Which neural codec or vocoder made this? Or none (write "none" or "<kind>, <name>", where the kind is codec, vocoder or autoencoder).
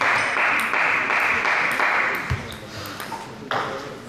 none